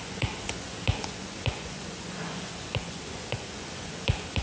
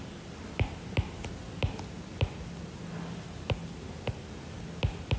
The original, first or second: second